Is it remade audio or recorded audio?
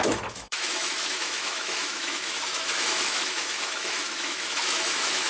remade